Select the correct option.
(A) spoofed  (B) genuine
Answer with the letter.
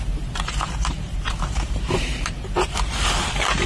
A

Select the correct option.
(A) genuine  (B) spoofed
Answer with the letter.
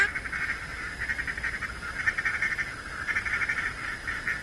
A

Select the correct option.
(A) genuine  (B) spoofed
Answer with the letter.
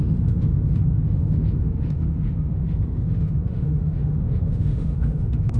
B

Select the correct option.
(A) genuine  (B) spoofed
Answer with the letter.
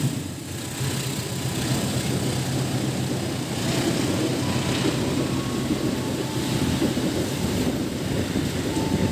A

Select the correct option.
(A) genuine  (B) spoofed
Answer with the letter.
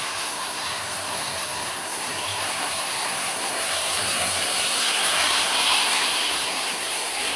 B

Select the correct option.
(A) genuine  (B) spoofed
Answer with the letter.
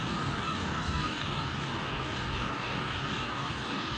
B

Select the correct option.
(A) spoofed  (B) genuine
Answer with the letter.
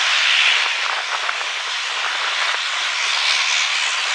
B